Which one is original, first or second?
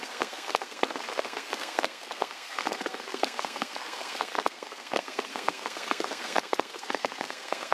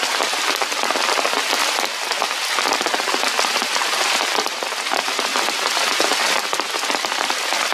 second